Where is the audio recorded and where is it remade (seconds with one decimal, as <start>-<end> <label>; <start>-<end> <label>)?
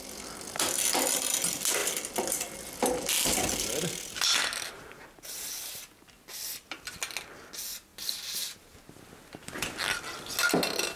0.0-11.0 recorded